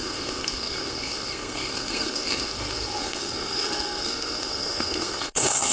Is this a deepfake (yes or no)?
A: yes